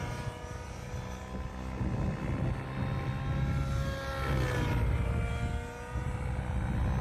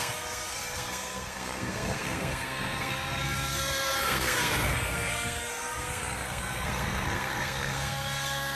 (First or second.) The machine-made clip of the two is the second